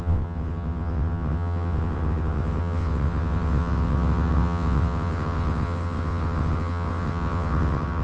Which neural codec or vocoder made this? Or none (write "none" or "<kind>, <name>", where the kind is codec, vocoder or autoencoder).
vocoder, WaveNeXt